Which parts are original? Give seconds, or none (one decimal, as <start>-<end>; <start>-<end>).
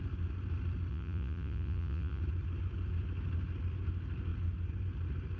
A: 0.0-0.9; 2.2-5.4